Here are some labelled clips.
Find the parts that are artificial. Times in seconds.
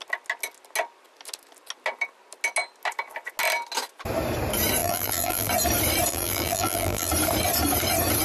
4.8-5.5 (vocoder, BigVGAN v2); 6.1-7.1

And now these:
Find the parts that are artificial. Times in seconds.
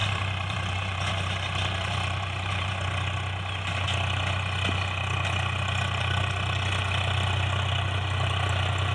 0.0-2.7 (vocoder, BigVGAN v2)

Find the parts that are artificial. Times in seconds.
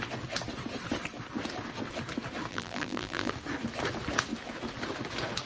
2.5-3.3 (vocoder, BigVGAN v2)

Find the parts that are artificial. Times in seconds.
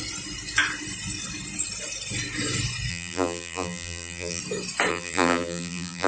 2.9-4.4 (vocoder, BigVGAN v2); 4.9-6.1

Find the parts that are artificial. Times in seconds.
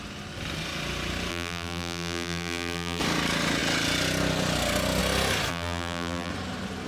1.3-3.0 (vocoder, BigVGAN v2); 5.5-6.3